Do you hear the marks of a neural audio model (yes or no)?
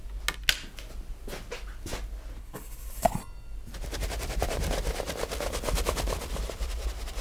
no